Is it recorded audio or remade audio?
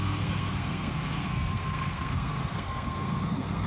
remade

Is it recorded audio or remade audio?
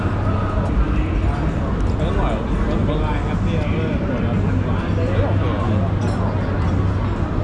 recorded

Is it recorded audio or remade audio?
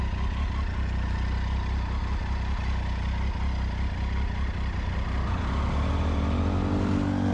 recorded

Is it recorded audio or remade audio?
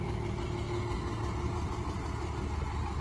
recorded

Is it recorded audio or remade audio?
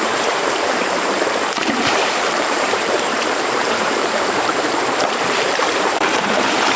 remade